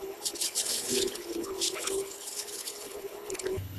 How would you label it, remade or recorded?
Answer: remade